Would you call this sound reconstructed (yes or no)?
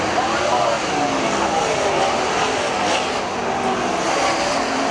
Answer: no